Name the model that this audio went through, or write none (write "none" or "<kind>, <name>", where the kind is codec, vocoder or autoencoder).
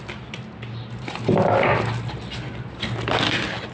none